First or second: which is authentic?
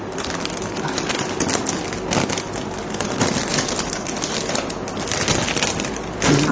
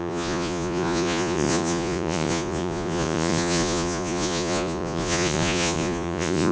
first